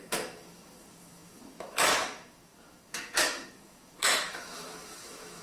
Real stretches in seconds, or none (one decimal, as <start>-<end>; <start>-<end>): none